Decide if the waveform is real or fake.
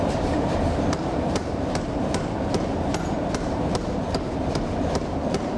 fake